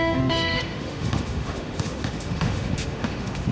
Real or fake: fake